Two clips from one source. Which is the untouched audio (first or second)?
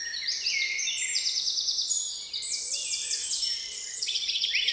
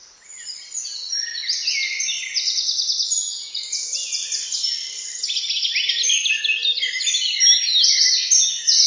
second